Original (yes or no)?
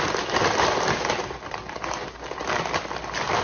yes